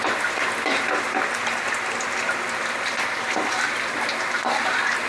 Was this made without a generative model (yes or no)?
yes